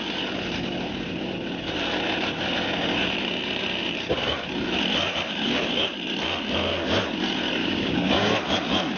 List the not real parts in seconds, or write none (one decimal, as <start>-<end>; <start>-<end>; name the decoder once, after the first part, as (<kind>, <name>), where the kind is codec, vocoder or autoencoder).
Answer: 7.6-8.3 (codec, DAC)